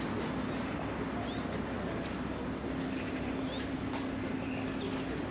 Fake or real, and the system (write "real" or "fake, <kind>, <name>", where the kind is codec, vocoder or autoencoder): real